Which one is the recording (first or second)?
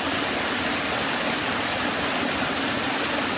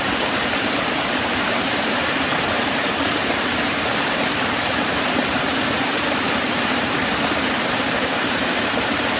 first